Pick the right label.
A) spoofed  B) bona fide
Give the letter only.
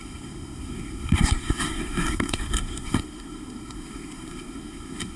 A